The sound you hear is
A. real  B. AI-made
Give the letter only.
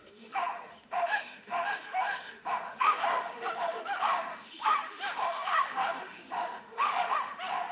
B